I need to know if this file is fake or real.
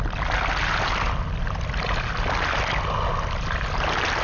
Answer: real